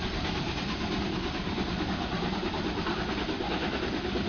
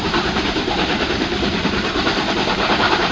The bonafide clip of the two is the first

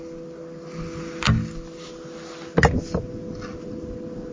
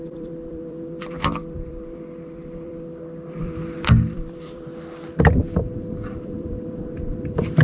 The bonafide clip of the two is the first